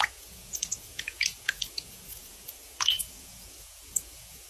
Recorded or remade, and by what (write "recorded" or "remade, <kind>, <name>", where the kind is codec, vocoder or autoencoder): remade, vocoder, Vocos